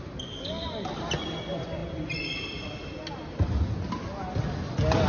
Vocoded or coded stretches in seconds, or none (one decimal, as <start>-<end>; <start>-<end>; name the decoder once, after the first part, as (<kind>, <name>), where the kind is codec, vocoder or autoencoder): none